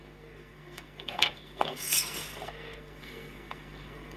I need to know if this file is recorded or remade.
remade